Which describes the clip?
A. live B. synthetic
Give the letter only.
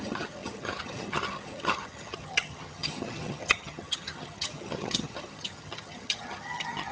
B